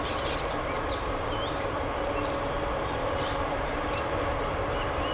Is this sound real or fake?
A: fake